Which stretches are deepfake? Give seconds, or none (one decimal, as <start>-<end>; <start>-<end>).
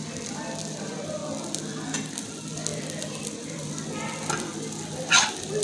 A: 0.0-1.2; 2.1-5.6